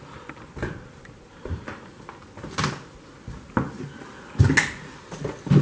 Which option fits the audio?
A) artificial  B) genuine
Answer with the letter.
B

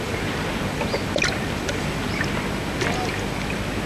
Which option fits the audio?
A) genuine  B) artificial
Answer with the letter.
A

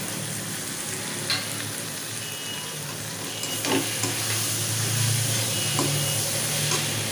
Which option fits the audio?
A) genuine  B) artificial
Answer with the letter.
A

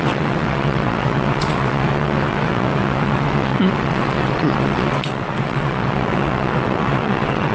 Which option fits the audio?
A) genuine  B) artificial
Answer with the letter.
B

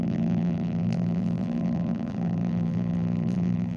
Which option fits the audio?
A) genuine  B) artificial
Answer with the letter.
B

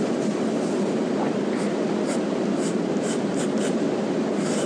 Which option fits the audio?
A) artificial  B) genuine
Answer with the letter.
B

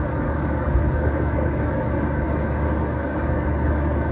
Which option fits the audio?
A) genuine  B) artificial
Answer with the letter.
B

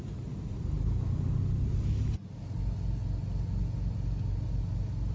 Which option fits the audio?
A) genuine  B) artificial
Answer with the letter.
A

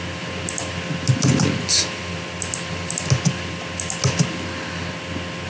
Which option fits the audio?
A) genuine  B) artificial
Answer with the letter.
A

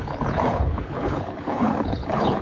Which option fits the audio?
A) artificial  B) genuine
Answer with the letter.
A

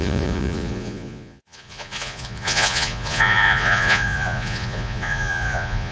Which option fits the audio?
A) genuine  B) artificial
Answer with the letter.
B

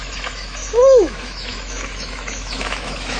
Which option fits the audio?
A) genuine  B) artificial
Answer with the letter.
B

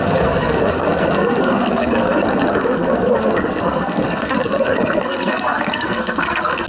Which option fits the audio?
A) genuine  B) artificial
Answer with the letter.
B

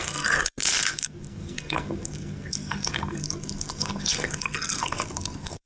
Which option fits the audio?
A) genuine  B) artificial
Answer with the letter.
B